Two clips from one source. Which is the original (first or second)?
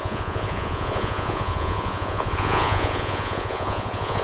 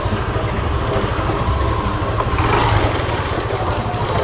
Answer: second